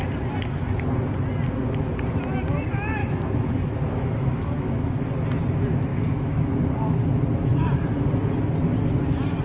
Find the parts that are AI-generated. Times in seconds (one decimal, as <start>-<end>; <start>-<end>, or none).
3.0-5.0; 5.9-6.6; 7.5-8.0